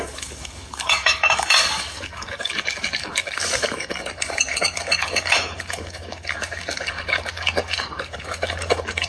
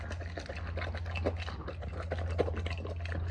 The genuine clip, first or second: second